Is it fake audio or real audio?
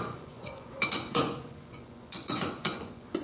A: fake